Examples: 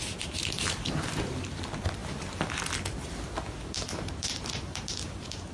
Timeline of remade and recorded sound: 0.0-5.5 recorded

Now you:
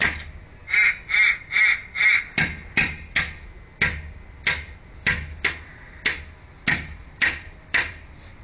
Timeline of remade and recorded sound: 0.0-7.0 recorded; 7.0-8.4 remade

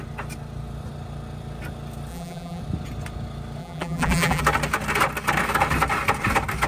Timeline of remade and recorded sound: 0.0-2.1 recorded; 2.1-2.6 remade; 2.6-3.6 recorded; 3.6-4.4 remade; 4.4-6.7 recorded

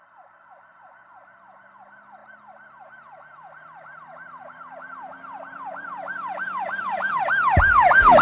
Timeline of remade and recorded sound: 0.0-2.2 recorded; 2.2-7.1 remade; 7.1-8.2 recorded